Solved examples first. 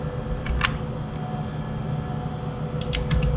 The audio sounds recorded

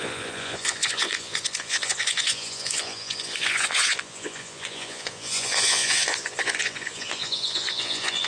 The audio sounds remade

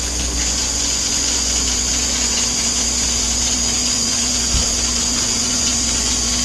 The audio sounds remade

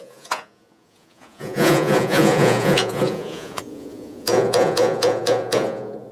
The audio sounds remade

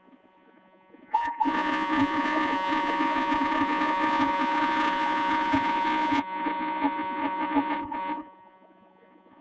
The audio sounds remade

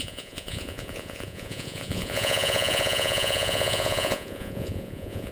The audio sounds remade